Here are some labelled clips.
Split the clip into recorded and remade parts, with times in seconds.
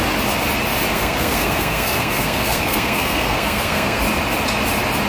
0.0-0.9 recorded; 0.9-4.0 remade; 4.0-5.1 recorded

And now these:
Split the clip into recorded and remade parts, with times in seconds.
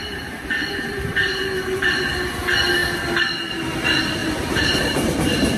0.0-2.0 remade; 2.0-4.2 recorded; 4.2-5.6 remade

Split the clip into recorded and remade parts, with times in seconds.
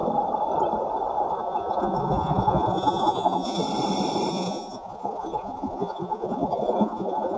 0.0-1.3 recorded; 1.3-3.6 remade; 3.6-4.3 recorded; 4.3-7.4 remade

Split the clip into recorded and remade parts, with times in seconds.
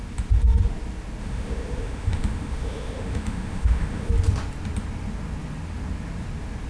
0.0-1.2 recorded; 1.2-4.1 remade; 4.1-6.7 recorded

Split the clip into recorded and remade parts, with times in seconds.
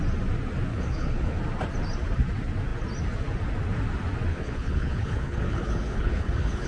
0.0-0.7 recorded; 0.7-1.4 remade; 1.4-4.3 recorded; 4.3-6.7 remade